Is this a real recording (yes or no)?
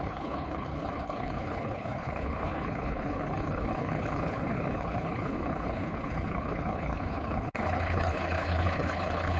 no